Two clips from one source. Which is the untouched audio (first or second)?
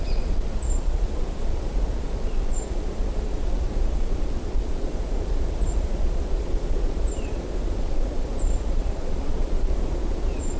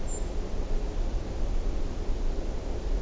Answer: second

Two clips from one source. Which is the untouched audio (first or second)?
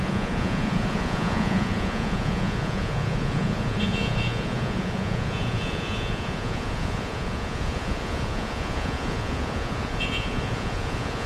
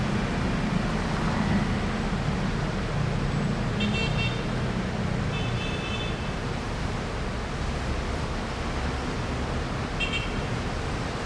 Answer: second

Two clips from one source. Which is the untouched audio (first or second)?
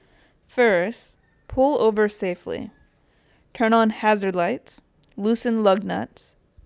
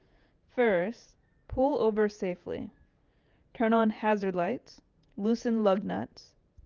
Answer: first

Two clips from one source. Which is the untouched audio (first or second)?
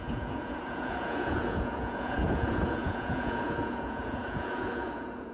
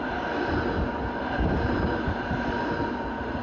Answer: second